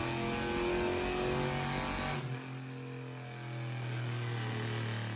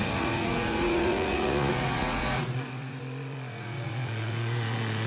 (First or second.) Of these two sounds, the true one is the first